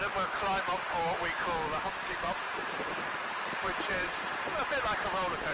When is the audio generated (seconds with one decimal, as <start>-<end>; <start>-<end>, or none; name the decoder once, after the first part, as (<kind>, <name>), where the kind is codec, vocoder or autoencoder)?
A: 2.1-4.3 (vocoder, BigVGAN v2)